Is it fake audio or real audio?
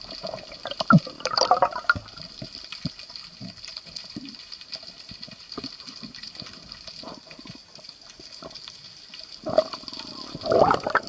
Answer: fake